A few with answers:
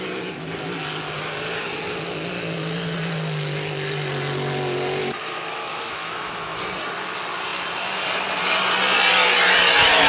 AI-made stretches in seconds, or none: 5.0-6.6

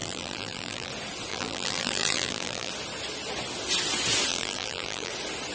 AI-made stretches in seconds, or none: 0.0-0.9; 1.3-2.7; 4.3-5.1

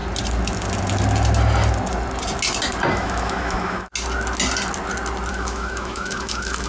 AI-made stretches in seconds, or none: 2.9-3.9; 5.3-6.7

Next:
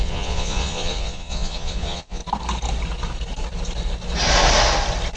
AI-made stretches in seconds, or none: 0.0-2.2

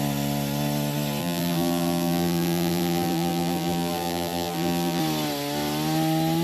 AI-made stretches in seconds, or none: 1.2-5.0

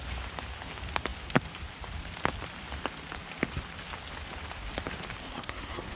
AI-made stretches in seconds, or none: 5.2-6.0

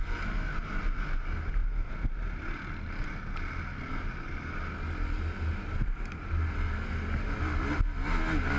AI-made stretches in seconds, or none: none

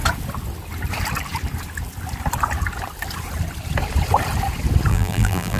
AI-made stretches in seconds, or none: 4.9-5.6